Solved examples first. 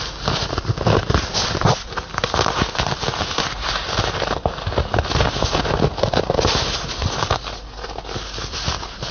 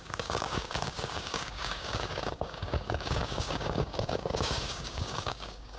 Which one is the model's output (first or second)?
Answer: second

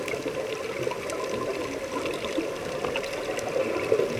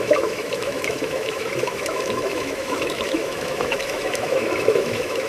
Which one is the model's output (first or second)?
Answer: second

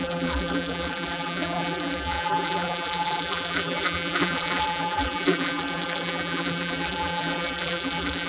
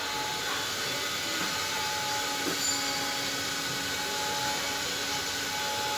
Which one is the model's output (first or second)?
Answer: first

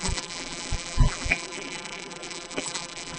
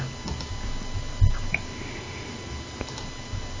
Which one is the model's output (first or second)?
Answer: first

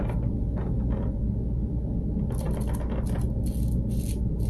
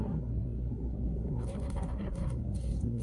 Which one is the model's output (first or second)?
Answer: second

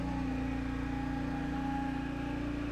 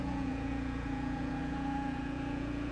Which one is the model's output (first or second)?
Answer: second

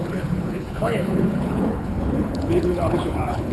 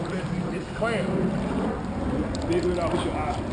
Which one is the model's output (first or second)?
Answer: first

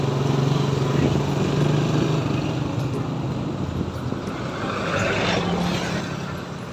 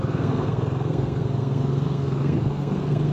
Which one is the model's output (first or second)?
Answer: second